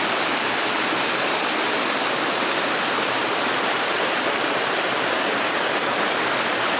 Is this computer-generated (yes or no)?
no